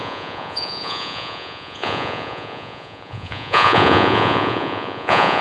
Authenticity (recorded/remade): remade